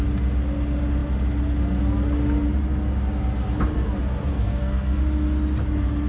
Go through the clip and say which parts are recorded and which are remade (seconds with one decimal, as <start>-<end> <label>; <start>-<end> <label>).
0.0-4.3 recorded; 4.3-5.0 remade; 5.0-6.1 recorded